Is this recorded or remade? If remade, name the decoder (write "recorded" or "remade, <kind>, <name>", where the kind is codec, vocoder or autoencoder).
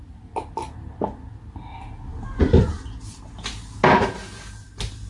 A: recorded